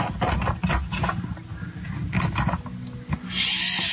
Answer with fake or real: real